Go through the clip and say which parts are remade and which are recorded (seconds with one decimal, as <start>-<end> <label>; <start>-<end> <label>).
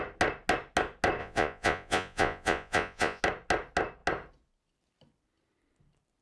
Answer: 0.0-1.2 recorded; 1.2-3.2 remade; 3.2-6.2 recorded